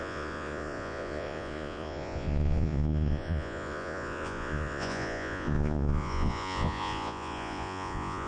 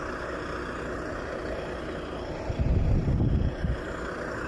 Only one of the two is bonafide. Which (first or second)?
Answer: second